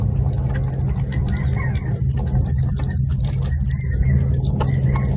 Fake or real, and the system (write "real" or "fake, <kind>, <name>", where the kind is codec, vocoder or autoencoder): real